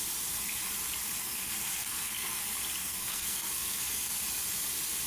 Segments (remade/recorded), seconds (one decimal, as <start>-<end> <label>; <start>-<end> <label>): 0.0-1.2 recorded; 1.2-2.4 remade; 2.4-2.8 recorded; 2.8-4.2 remade; 4.2-5.1 recorded